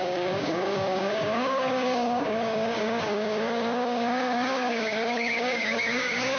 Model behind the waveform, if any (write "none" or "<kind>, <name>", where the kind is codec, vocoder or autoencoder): codec, DAC